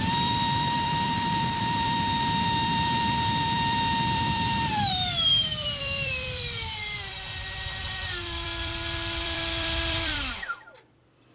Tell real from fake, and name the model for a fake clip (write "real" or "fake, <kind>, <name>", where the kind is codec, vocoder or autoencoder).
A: fake, vocoder, BigVGAN v2